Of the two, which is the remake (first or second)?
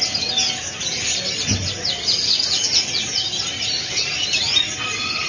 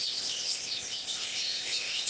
second